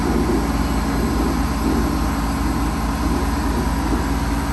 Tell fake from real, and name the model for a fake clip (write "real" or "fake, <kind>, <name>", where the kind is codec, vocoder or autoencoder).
real